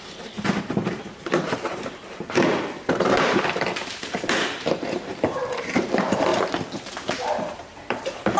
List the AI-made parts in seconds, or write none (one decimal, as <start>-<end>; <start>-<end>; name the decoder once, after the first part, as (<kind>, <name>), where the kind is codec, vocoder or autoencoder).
0.0-6.3 (vocoder, BigVGAN v2); 7.4-8.4